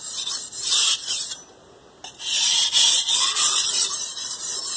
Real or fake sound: real